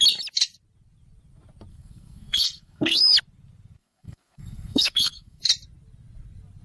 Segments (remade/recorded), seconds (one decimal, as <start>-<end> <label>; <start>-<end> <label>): 0.0-1.7 recorded; 1.7-3.0 remade; 3.0-3.8 recorded; 3.8-5.4 remade; 5.4-6.6 recorded

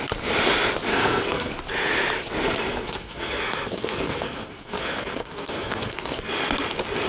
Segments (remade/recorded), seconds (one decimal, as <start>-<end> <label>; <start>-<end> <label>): 0.0-0.9 recorded; 0.9-1.6 remade; 1.6-2.7 recorded; 2.7-6.3 remade; 6.3-7.1 recorded

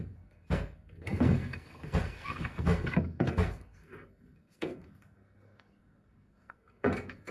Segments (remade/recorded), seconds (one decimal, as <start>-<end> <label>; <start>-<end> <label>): 0.0-7.3 remade

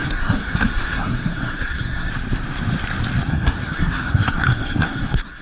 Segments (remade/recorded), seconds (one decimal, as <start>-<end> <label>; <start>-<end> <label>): 0.0-2.1 remade; 2.1-3.3 recorded; 3.3-5.4 remade

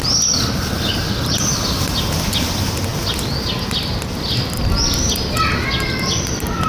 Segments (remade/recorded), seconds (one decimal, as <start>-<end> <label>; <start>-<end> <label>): 0.0-6.7 recorded

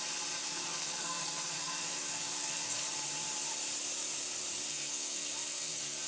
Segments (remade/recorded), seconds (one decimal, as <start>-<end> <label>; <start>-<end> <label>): 0.0-0.4 recorded; 0.4-2.9 remade; 2.9-4.7 recorded; 4.7-6.1 remade

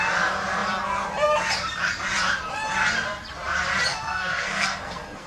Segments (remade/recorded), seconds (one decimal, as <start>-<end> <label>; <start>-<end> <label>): 0.0-3.9 recorded; 3.9-5.3 remade

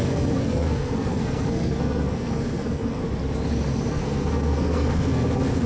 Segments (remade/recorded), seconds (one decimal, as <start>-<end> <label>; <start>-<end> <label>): 0.0-3.0 remade; 3.0-3.9 recorded; 3.9-5.7 remade